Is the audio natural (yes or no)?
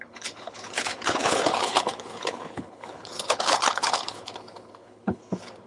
no